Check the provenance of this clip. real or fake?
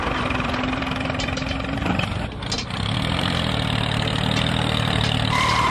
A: fake